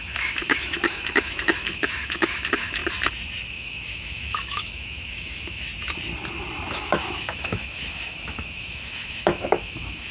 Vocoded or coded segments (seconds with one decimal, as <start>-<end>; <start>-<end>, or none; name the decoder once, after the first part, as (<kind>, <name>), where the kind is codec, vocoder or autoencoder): 0.0-2.8 (autoencoder, DAC-VAE); 3.5-5.7; 6.7-10.1